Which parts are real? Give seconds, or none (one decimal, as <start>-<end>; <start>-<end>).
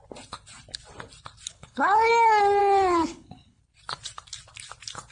0.0-1.5; 2.1-2.6; 3.6-5.1